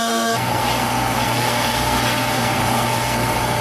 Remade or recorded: remade